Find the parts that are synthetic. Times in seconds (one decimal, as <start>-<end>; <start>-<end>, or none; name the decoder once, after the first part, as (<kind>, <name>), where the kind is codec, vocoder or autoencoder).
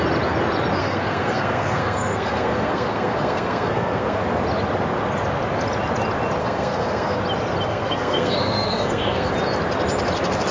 0.8-4.2 (codec, SNAC); 6.4-7.2; 7.7-9.3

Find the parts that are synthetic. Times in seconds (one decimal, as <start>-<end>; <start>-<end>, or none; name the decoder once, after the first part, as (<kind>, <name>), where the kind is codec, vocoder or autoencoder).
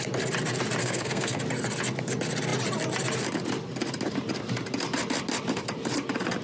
0.8-1.4 (codec, SNAC)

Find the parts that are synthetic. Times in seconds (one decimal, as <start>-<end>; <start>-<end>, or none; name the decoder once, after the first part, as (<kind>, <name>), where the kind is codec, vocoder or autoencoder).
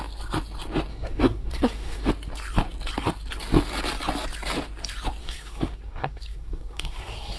0.9-2.1 (codec, SNAC); 5.2-7.4